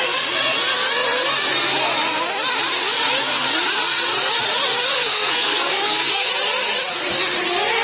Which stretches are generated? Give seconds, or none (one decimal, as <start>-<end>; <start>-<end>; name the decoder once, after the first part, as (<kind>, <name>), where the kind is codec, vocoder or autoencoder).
4.9-6.3 (codec, SNAC)